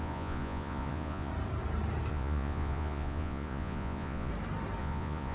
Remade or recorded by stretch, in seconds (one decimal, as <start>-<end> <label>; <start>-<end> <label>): 0.0-1.3 remade; 1.3-2.1 recorded; 2.1-4.3 remade; 4.3-4.8 recorded; 4.8-5.3 remade